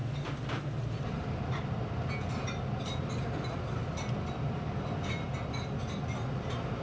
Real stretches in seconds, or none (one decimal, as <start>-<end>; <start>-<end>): 0.0-3.2; 3.8-6.3